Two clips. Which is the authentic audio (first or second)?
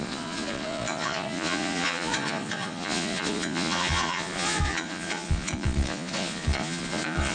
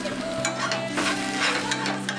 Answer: second